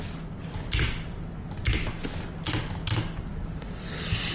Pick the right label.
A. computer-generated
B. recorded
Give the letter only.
B